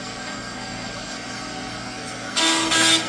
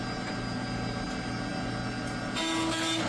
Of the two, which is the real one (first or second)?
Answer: second